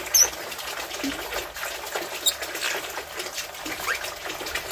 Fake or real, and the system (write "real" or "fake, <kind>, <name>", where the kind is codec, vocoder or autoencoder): real